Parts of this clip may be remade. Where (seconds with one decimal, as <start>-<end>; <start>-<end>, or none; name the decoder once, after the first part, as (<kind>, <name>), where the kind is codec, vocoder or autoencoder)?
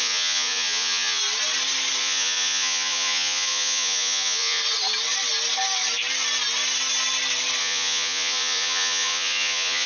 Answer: 0.0-1.2 (vocoder, Vocos); 2.0-4.6; 7.6-9.9